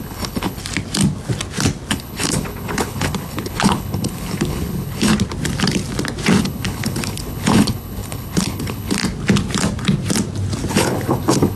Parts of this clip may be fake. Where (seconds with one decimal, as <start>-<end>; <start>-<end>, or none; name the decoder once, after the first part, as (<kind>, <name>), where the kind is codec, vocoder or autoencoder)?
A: 0.0-0.6 (codec, HILCodec); 1.9-5.1; 6.4-9.0; 10.7-11.6